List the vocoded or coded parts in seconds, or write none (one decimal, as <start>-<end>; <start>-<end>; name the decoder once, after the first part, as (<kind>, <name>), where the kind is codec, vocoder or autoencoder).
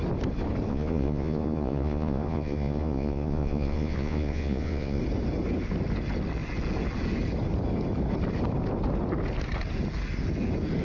0.7-5.0 (vocoder, Vocos)